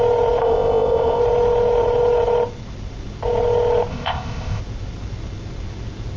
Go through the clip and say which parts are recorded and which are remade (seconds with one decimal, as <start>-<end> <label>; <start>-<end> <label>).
0.0-0.4 recorded; 0.4-1.2 remade; 1.2-3.9 recorded; 3.9-4.6 remade; 4.6-6.2 recorded